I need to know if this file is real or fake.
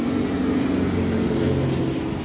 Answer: real